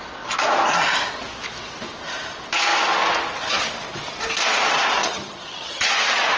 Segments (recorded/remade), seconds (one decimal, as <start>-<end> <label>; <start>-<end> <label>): 0.0-5.0 recorded; 5.0-5.9 remade; 5.9-6.4 recorded